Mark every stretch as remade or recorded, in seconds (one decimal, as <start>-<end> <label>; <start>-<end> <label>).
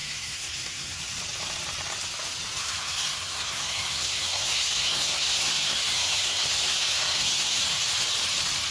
0.0-1.0 remade; 1.0-2.6 recorded; 2.6-7.6 remade; 7.6-8.7 recorded